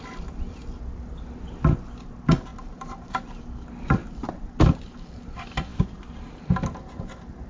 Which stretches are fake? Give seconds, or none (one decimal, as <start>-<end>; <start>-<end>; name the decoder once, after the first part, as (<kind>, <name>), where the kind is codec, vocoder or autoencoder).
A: 2.5-3.4 (vocoder, BigVGAN v2); 5.7-6.3